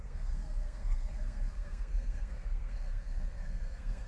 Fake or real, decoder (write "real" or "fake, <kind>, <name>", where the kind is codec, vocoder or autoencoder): fake, codec, SNAC